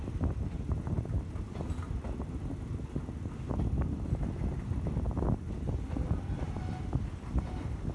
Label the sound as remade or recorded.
recorded